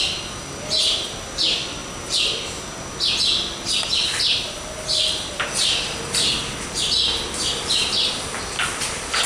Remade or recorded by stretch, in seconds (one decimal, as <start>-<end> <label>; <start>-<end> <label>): 0.0-9.3 recorded